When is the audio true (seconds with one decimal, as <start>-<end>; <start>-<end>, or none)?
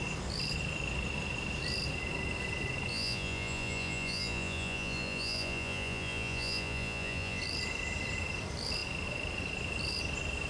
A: 0.0-2.9; 7.4-10.5